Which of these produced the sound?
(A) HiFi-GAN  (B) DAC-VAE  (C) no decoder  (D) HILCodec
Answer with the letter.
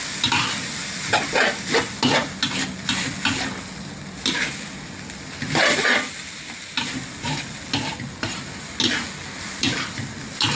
C